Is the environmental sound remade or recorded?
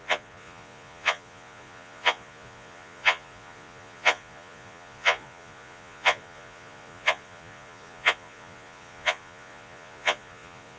remade